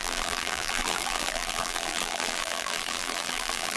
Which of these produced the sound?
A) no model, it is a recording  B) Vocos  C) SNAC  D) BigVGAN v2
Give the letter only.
D